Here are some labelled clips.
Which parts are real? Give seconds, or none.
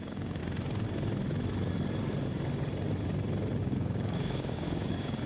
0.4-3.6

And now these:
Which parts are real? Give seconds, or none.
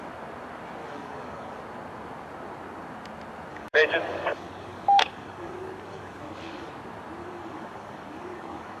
0.0-0.8; 1.6-3.5; 6.7-7.2